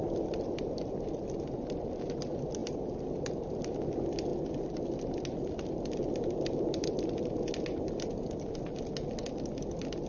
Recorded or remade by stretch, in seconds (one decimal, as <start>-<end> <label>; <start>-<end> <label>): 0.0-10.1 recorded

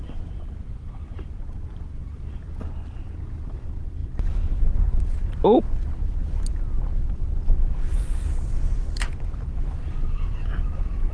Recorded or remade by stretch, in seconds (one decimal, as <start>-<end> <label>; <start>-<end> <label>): 0.0-11.1 recorded

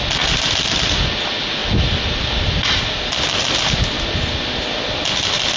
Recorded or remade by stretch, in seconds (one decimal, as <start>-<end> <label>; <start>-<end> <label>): 0.0-5.6 recorded

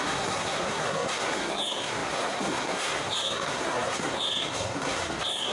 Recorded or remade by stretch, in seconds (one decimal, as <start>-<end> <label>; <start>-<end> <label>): 0.0-5.5 remade

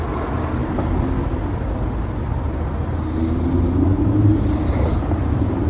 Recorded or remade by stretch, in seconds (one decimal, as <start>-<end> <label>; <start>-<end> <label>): 0.0-0.6 remade; 0.6-4.0 recorded; 4.0-5.7 remade

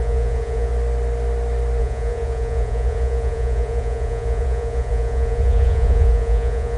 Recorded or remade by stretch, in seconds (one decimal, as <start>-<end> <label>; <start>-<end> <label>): 0.0-0.7 remade; 0.7-1.8 recorded; 1.8-6.8 remade